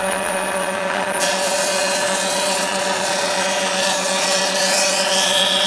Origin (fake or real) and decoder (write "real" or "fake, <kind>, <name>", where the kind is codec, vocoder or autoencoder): fake, vocoder, Vocos